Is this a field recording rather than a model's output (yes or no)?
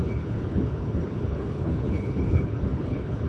no